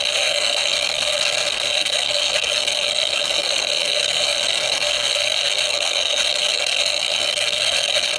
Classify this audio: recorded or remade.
remade